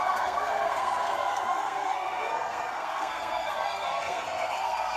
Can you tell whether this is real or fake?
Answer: fake